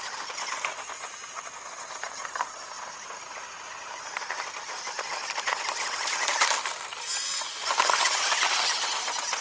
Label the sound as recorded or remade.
recorded